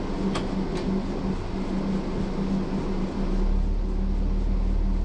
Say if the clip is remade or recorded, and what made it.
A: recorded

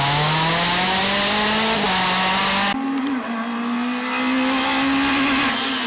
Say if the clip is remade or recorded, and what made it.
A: recorded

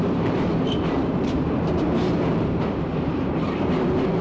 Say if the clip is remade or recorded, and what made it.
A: remade, vocoder, BigVGAN v2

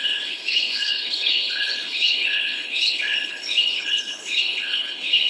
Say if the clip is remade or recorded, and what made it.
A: remade, codec, HILCodec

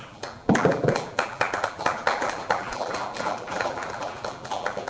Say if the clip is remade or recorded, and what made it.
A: remade, vocoder, BigVGAN v2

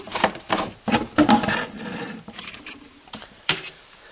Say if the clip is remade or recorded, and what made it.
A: remade, vocoder, BigVGAN v2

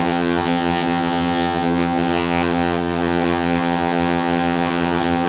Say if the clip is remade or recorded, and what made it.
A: remade, vocoder, HiFi-GAN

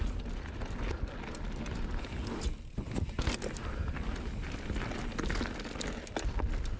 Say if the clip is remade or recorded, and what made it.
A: recorded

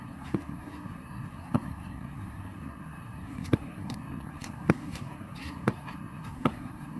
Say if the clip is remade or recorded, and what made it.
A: remade, codec, SNAC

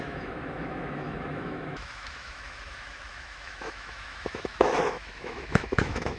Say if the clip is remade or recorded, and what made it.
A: remade, autoencoder, DAC-VAE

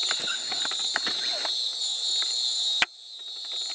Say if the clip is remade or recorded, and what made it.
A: recorded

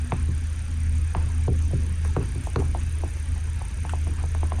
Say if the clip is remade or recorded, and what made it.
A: recorded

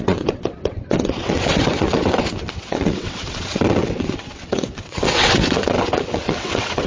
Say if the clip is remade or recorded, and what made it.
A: remade, vocoder, WaveNeXt